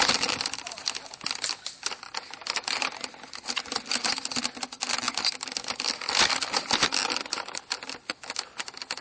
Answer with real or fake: real